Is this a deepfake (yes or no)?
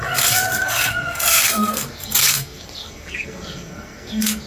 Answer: yes